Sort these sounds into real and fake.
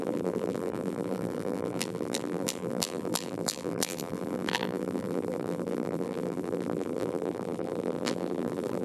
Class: fake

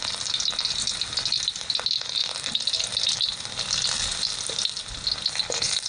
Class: real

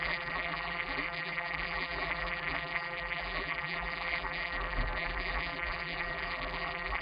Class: fake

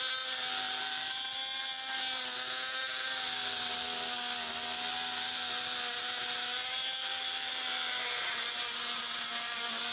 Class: real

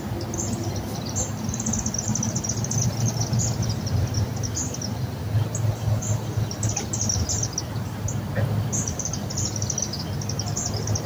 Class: real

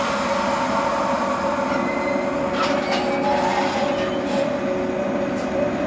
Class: real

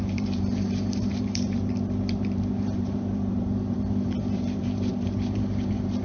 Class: fake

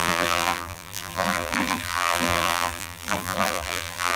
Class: fake